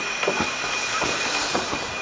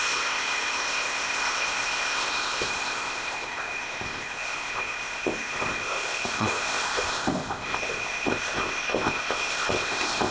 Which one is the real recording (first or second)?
first